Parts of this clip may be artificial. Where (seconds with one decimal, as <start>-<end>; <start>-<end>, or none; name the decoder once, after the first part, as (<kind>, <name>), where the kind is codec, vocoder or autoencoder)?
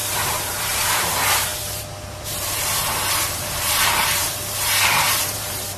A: 0.0-5.8 (vocoder, BigVGAN v2)